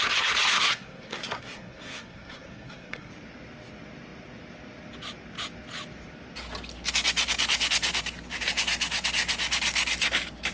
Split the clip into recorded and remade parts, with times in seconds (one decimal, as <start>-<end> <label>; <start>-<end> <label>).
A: 0.0-0.5 recorded; 0.5-3.1 remade; 3.1-10.5 recorded